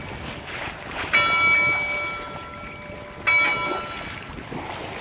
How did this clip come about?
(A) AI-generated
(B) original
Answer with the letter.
B